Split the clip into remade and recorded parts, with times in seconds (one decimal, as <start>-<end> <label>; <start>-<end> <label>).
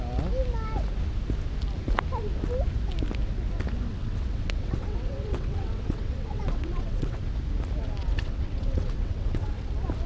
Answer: 0.0-3.9 recorded; 3.9-7.2 remade; 7.2-8.0 recorded; 8.0-9.7 remade; 9.7-10.1 recorded